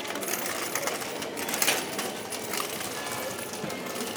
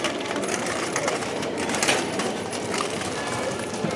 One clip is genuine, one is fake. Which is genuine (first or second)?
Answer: first